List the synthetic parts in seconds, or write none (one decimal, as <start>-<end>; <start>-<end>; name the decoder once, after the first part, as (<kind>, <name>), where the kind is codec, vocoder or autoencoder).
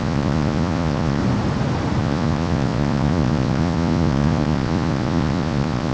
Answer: 0.0-1.2 (vocoder, Vocos); 2.0-5.9